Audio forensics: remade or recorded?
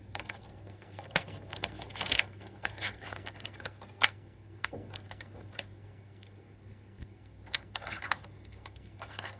remade